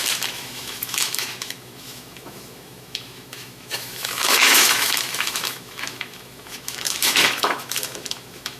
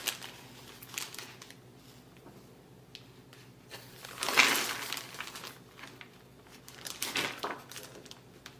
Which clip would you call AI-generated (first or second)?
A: first